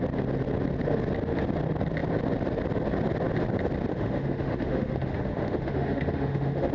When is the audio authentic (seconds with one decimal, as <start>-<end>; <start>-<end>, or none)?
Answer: 0.0-3.9